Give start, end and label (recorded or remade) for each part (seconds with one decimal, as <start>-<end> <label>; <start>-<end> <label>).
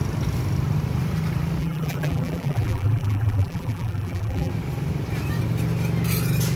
0.0-1.6 recorded; 1.6-4.5 remade; 4.5-6.6 recorded